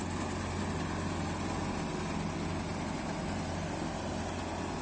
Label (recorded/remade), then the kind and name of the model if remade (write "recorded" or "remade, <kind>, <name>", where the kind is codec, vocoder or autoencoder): recorded